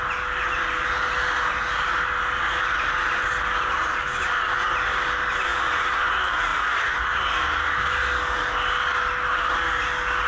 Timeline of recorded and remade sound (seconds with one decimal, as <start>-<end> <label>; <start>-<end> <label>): 0.0-6.5 recorded; 6.5-7.2 remade; 7.2-10.3 recorded